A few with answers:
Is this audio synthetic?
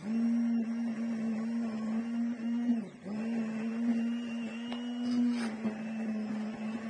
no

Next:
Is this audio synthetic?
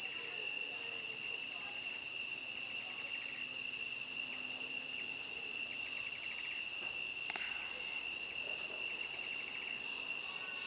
no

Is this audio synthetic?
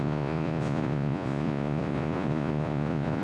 yes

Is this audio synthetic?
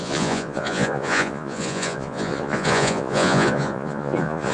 yes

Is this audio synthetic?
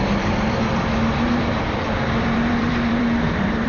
yes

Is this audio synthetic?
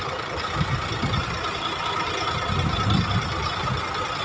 no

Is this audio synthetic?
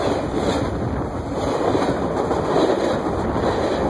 no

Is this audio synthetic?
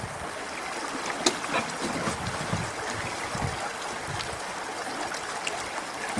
no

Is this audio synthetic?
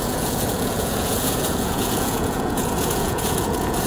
yes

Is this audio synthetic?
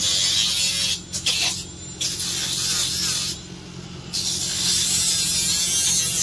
no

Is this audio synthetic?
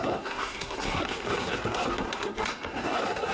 yes